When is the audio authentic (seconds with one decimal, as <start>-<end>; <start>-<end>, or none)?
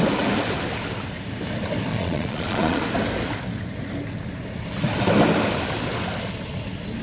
0.0-1.9; 2.8-7.0